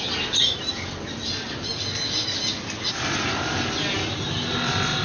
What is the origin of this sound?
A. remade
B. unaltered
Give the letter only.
B